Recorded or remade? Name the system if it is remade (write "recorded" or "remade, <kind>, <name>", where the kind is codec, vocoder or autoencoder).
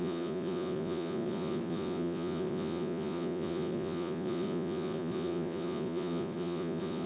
remade, vocoder, Vocos